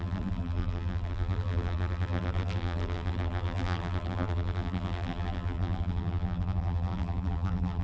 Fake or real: fake